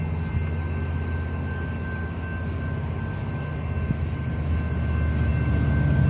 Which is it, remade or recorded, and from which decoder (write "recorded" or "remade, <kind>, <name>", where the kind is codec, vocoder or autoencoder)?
recorded